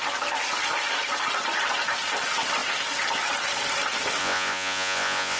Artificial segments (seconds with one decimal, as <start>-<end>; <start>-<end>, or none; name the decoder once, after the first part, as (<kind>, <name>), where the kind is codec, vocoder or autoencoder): 4.2-5.4 (vocoder, Vocos)